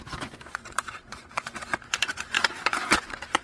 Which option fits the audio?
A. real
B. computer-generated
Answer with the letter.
B